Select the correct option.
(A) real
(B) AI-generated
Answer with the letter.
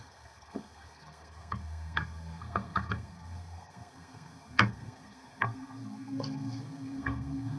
B